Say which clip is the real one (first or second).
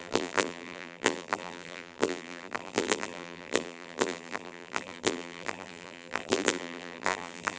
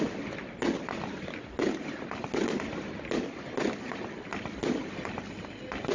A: second